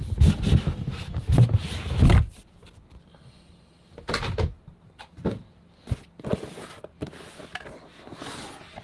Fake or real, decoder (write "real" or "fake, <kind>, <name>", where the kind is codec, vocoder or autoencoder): real